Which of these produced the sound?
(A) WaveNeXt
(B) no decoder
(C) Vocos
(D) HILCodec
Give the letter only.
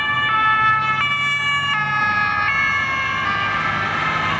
B